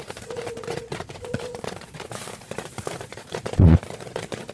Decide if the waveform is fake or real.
fake